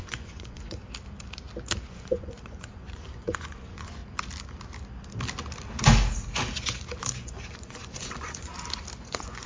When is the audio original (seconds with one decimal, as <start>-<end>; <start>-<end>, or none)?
0.8-1.9; 4.0-7.0; 8.5-9.0